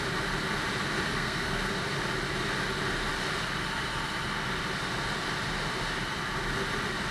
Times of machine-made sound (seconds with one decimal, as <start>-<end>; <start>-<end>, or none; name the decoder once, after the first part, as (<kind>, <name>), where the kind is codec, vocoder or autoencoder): 1.1-1.7 (codec, SNAC)